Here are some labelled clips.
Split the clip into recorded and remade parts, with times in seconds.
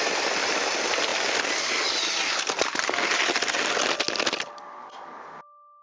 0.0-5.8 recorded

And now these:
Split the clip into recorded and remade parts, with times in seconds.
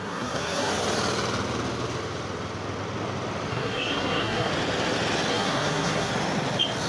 0.0-0.7 remade; 0.7-3.5 recorded; 3.5-4.5 remade; 4.5-5.3 recorded; 5.3-6.1 remade; 6.1-6.9 recorded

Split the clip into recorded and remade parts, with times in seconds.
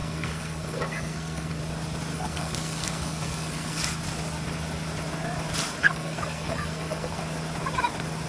0.0-1.6 remade; 1.6-2.1 recorded; 2.1-3.8 remade; 3.8-5.8 recorded; 5.8-7.2 remade; 7.2-8.3 recorded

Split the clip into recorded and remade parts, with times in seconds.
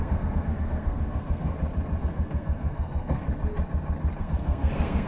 0.0-1.5 remade; 1.5-2.0 recorded; 2.0-3.2 remade; 3.2-4.2 recorded; 4.2-5.1 remade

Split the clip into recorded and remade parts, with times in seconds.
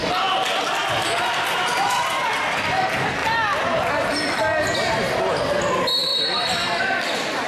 0.0-7.5 recorded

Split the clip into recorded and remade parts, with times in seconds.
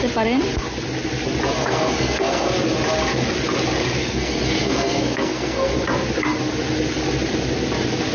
0.0-1.6 recorded; 1.6-2.5 remade; 2.5-4.0 recorded; 4.0-5.7 remade; 5.7-8.1 recorded